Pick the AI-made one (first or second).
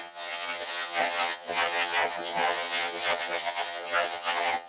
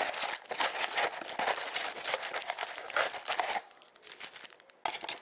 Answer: first